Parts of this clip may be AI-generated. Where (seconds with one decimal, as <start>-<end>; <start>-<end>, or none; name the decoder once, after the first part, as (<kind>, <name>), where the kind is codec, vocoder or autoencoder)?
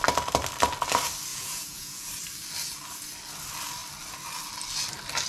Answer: 1.3-2.1 (vocoder, Vocos)